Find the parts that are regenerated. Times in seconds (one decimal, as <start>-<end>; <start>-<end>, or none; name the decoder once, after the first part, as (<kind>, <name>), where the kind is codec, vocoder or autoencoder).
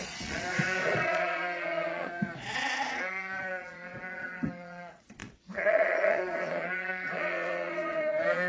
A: 0.0-8.5 (vocoder, Vocos)